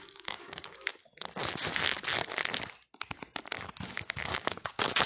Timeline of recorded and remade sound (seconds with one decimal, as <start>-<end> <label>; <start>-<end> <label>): 0.0-1.0 remade; 1.0-3.9 recorded; 3.9-5.1 remade